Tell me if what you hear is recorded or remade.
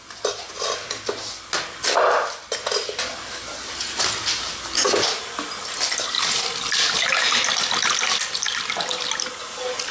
recorded